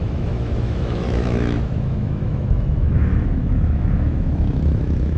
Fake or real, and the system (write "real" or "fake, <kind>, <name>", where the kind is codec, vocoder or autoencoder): fake, autoencoder, DAC-VAE